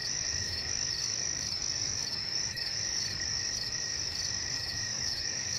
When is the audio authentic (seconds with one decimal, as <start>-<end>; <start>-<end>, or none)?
none